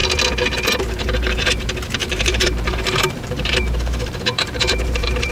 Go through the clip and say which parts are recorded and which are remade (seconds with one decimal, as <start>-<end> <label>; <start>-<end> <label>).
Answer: 0.0-0.8 recorded; 0.8-5.3 remade